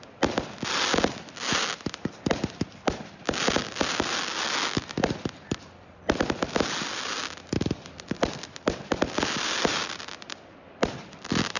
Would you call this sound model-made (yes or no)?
no